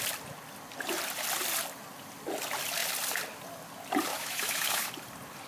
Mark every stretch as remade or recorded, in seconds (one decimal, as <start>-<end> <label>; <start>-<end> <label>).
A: 0.0-4.1 recorded; 4.1-4.9 remade; 4.9-5.5 recorded